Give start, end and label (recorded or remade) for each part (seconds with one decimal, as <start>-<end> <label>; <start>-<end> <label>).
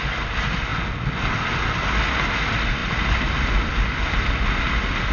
0.0-5.1 recorded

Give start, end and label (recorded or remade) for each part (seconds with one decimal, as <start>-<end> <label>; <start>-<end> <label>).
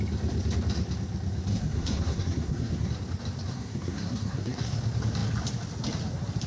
0.0-1.5 recorded; 1.5-2.9 remade; 2.9-3.5 recorded; 3.5-4.8 remade; 4.8-6.5 recorded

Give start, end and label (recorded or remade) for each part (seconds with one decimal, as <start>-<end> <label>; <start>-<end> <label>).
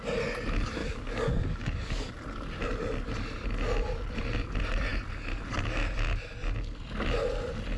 0.0-0.8 recorded; 0.8-2.1 remade; 2.1-7.8 recorded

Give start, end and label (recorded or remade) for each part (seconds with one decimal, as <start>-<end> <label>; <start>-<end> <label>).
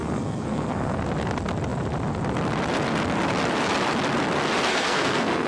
0.0-1.0 remade; 1.0-4.7 recorded; 4.7-5.5 remade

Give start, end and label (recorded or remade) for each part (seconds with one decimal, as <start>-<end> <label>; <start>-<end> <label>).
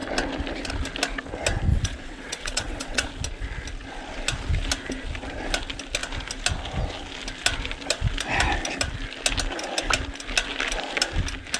0.0-1.7 recorded; 1.7-3.1 remade; 3.1-11.6 recorded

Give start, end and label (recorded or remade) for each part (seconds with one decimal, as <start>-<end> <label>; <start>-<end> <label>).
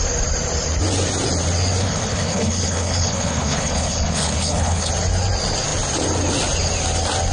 0.0-1.8 recorded; 1.8-4.9 remade; 4.9-7.3 recorded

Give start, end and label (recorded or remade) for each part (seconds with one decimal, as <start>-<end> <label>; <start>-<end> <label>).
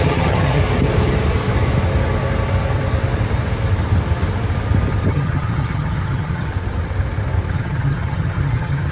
0.0-0.6 remade; 0.6-5.1 recorded; 5.1-6.5 remade; 6.5-7.5 recorded; 7.5-8.9 remade